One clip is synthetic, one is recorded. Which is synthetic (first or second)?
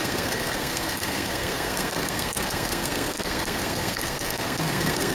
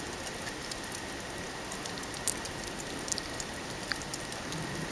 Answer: first